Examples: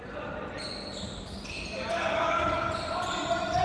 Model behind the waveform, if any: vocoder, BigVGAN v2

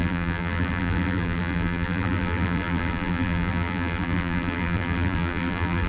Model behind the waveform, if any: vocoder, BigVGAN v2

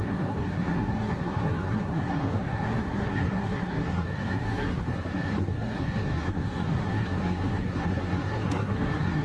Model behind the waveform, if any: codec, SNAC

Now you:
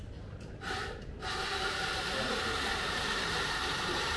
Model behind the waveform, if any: vocoder, BigVGAN v2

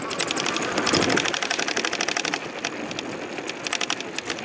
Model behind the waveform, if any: none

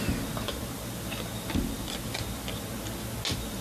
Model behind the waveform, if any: none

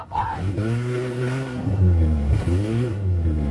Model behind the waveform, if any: codec, SNAC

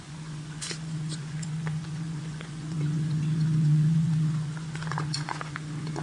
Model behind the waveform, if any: vocoder, Vocos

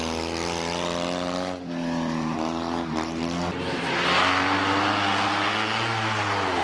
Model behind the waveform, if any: none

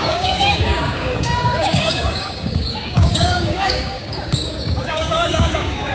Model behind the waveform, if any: codec, DAC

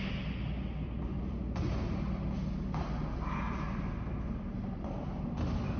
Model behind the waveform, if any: none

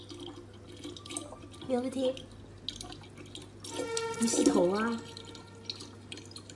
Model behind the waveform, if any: none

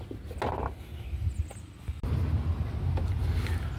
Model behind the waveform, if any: none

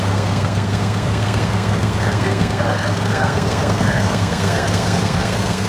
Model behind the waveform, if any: codec, SNAC